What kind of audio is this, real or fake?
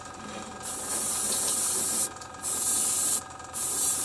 fake